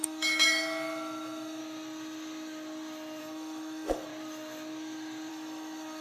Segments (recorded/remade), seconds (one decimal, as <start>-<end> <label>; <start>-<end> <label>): 0.0-1.6 remade; 1.6-3.2 recorded; 3.2-4.1 remade; 4.1-5.3 recorded; 5.3-6.0 remade